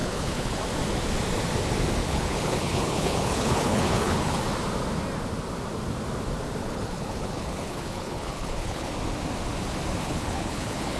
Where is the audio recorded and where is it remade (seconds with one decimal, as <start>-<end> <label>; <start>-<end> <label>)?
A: 0.0-0.6 remade; 0.6-2.0 recorded; 2.0-4.4 remade; 4.4-6.6 recorded; 6.6-8.9 remade; 8.9-10.0 recorded; 10.0-11.0 remade